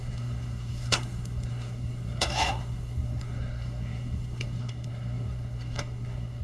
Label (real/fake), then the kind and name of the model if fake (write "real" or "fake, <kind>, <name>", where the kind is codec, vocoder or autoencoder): fake, codec, SNAC